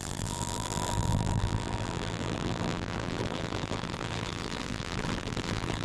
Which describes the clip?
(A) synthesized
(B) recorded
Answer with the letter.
A